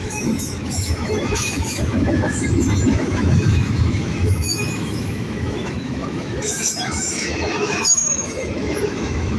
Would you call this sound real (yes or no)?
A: no